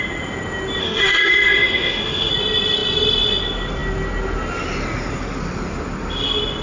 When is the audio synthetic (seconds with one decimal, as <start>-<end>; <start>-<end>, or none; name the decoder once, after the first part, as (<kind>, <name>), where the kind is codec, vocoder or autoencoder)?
0.8-2.3 (autoencoder, DAC-VAE)